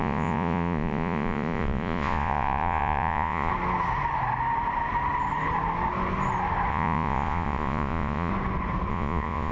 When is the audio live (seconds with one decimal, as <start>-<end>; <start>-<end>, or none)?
3.5-6.7; 8.3-8.9